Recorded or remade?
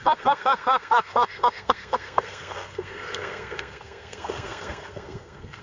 remade